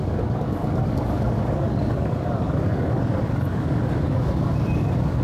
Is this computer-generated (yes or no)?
yes